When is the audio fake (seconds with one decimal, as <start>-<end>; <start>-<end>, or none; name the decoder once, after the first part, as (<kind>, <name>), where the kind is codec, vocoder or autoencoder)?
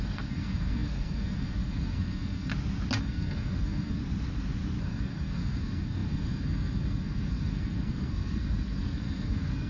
0.0-2.5 (codec, SNAC); 3.0-4.0; 4.8-9.7